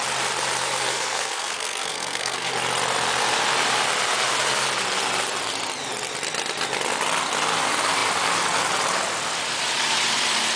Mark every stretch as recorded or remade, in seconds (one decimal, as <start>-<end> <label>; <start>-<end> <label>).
0.0-0.9 recorded; 0.9-2.5 remade; 2.5-10.6 recorded